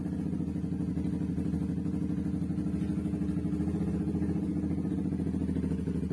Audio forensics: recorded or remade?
recorded